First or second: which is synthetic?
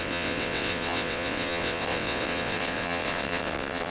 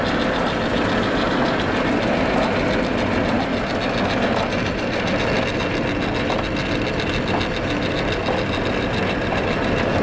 first